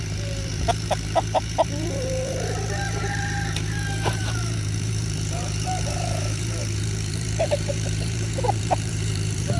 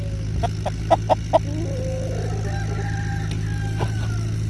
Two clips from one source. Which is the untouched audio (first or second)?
second